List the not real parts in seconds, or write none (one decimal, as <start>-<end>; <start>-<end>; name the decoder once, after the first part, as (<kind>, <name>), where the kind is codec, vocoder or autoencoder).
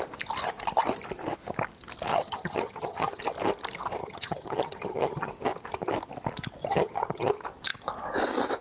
2.1-3.2 (vocoder, HiFi-GAN); 4.0-5.3; 6.6-7.3